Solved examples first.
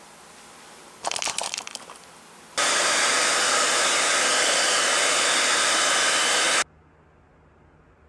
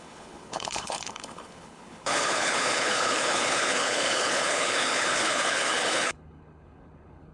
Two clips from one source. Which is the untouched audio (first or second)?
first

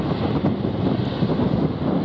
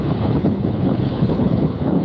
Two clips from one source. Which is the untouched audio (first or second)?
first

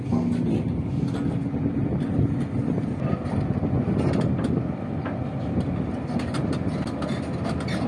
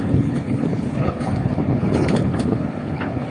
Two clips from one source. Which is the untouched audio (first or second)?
first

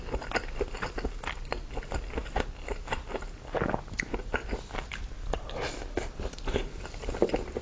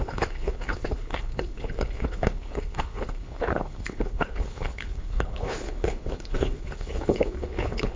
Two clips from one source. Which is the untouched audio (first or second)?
first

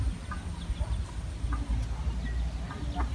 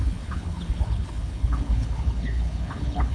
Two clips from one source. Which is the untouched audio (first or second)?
first